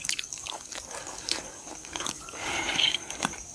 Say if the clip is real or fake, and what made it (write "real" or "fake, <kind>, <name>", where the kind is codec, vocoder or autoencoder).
fake, codec, DAC